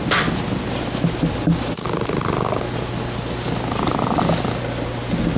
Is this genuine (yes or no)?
yes